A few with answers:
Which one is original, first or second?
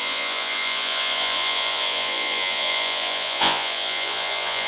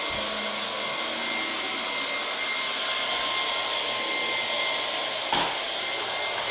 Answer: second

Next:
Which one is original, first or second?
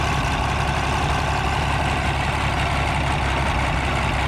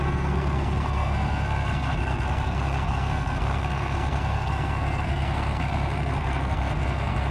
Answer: first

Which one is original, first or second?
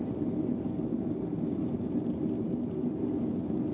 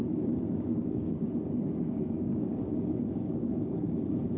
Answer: first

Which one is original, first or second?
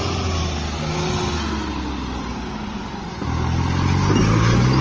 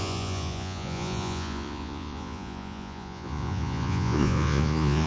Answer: first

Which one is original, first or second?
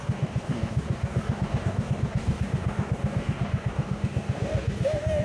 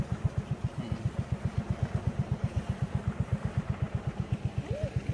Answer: second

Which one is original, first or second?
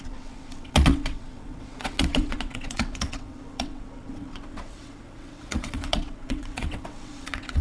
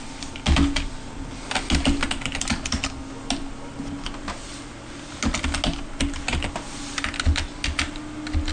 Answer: second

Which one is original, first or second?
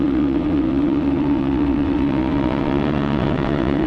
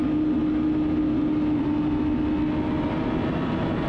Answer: second